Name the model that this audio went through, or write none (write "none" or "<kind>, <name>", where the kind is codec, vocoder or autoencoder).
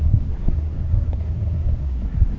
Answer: codec, SNAC